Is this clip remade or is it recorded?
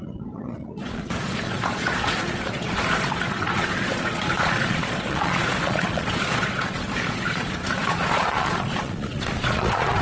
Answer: remade